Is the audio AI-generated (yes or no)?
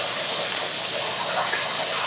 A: no